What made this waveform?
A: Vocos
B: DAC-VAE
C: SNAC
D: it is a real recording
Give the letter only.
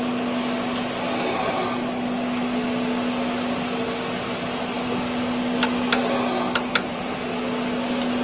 D